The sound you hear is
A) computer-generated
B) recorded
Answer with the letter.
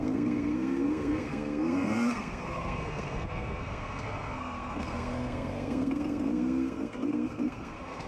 A